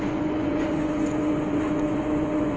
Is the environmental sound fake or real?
fake